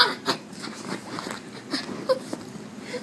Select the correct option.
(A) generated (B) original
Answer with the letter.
B